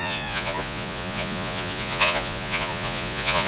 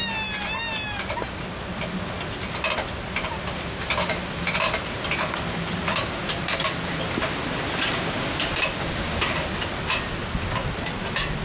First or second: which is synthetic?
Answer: first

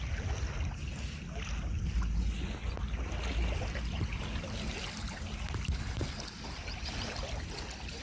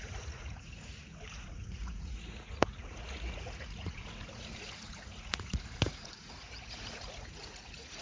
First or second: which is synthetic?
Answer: second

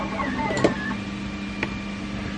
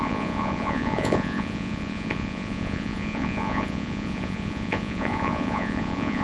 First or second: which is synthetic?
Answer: second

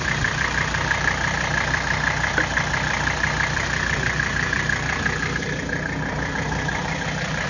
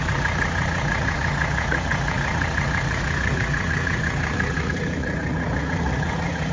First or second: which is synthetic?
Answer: second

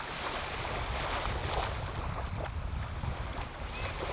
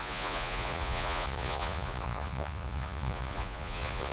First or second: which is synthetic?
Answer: second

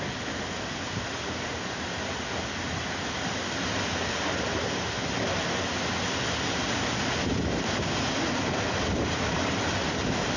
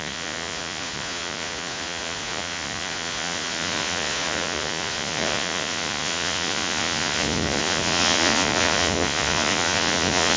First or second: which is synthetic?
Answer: second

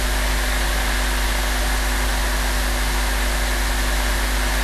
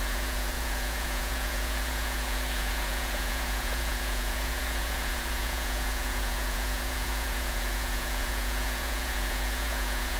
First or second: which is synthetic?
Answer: second